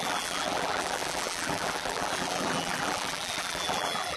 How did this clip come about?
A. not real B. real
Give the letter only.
A